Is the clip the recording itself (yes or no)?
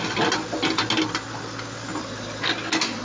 yes